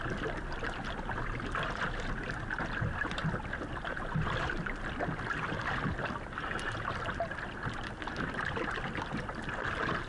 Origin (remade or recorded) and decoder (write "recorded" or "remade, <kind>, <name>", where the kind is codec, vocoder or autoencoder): recorded